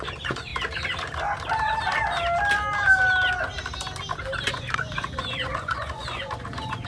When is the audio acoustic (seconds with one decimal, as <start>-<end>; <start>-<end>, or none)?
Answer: 0.5-4.5